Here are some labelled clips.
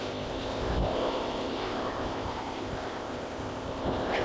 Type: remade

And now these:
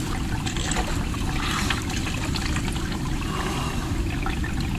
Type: recorded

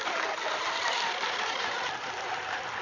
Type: recorded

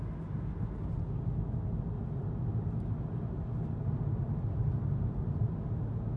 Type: recorded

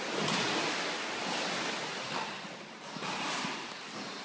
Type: recorded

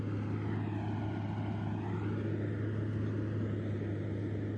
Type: recorded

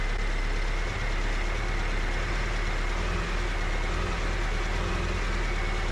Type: recorded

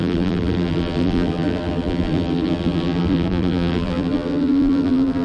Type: remade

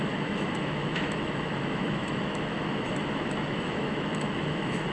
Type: remade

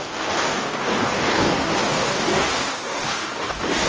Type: remade